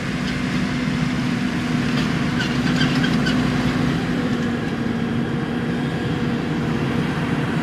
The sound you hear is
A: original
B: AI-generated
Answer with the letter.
A